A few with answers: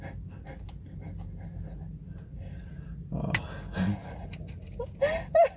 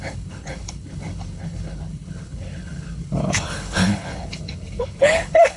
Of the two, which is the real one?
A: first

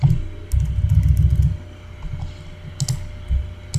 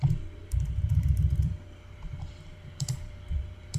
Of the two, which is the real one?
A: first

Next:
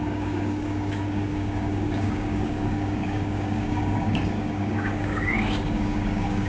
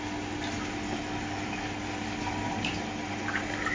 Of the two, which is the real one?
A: second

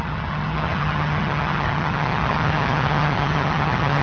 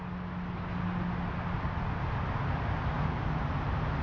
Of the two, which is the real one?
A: second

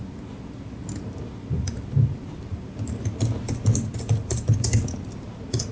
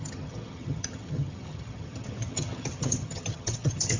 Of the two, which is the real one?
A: first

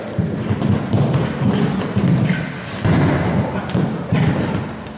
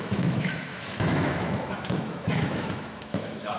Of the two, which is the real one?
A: first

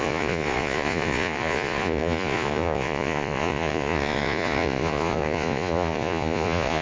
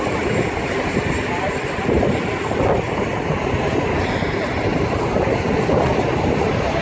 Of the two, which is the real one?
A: second